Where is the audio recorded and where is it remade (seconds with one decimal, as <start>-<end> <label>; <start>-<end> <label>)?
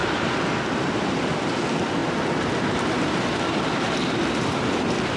0.0-5.2 recorded